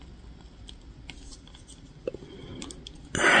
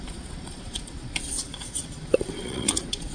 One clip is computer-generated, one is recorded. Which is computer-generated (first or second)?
second